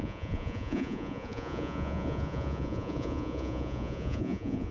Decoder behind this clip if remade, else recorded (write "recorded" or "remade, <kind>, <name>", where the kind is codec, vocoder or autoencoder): remade, vocoder, Vocos